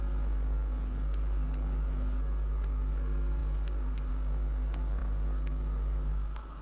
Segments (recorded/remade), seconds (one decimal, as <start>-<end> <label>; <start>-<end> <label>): 0.0-6.6 remade